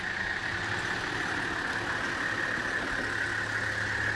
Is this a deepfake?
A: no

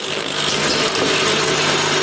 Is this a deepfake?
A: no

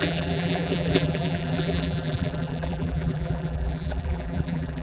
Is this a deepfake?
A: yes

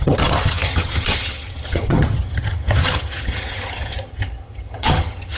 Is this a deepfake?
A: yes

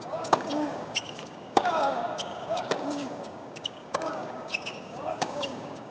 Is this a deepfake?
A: yes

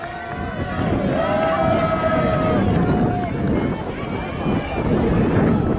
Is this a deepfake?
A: no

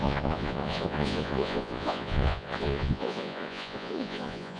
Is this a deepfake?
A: yes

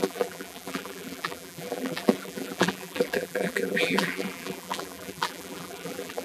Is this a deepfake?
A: yes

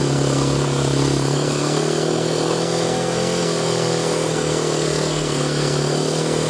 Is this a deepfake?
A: yes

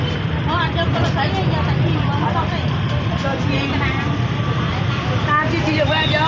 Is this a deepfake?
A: no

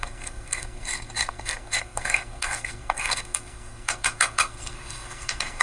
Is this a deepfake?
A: yes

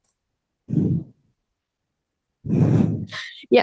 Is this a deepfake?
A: no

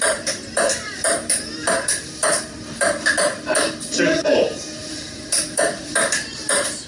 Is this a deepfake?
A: yes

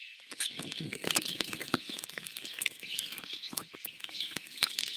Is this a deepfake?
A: yes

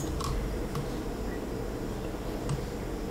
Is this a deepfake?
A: no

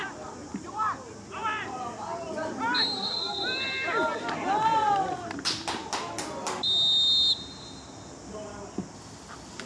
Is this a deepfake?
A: no